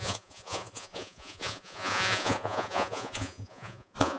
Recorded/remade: remade